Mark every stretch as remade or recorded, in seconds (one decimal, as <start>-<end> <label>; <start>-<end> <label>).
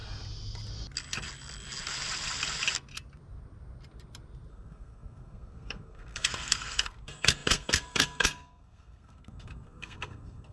0.0-4.5 recorded; 4.5-10.5 remade